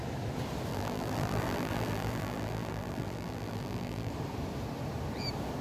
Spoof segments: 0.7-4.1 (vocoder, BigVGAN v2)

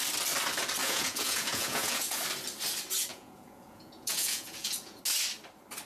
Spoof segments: 0.8-2.2 (vocoder, Vocos); 3.1-5.0